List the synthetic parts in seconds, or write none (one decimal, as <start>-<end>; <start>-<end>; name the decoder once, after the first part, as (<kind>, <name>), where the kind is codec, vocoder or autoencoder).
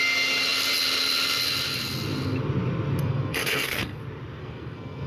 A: 3.0-4.0 (codec, SNAC); 4.4-5.1